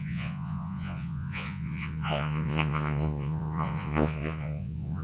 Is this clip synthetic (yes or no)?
yes